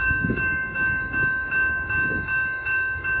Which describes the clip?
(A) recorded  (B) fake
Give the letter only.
B